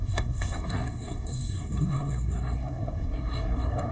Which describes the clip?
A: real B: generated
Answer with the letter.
B